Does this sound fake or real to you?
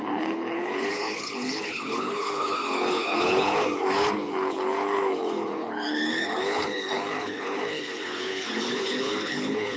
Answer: fake